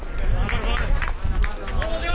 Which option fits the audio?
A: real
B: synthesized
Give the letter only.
A